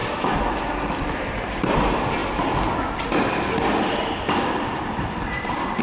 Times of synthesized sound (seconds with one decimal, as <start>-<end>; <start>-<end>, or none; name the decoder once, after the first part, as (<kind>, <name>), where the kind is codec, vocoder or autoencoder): 0.6-5.8 (vocoder, BigVGAN v2)